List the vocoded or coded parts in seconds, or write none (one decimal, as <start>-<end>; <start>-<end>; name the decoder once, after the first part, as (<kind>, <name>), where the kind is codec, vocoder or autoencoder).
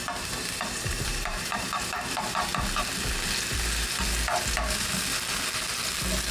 0.0-2.5 (vocoder, BigVGAN v2)